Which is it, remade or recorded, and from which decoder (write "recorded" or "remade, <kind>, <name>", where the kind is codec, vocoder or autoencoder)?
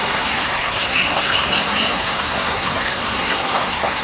remade, codec, SNAC